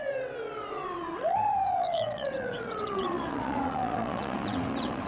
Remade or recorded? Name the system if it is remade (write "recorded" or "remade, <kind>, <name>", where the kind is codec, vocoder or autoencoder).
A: remade, vocoder, WaveNeXt